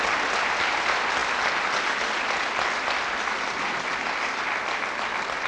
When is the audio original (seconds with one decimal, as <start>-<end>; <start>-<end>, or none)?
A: 0.0-5.5